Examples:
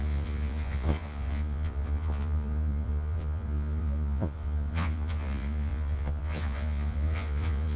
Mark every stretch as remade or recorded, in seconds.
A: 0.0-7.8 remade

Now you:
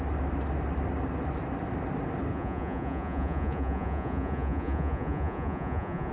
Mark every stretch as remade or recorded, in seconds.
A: 0.0-2.3 recorded; 2.3-6.1 remade

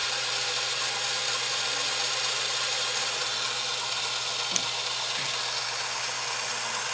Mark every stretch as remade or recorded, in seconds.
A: 0.0-6.9 recorded

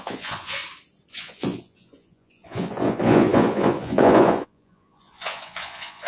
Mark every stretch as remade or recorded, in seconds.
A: 0.0-0.6 remade; 0.6-1.1 recorded; 1.1-6.1 remade

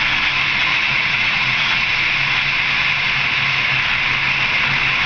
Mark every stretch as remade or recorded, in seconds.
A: 0.0-0.6 recorded; 0.6-1.9 remade; 1.9-5.1 recorded

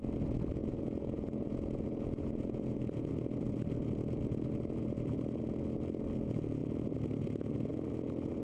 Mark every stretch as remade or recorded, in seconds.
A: 0.0-0.6 recorded; 0.6-3.1 remade; 3.1-8.4 recorded

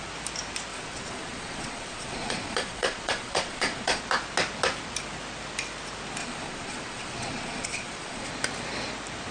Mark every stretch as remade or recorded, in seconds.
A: 0.0-0.7 recorded; 0.7-4.0 remade; 4.0-6.2 recorded; 6.2-8.3 remade; 8.3-9.3 recorded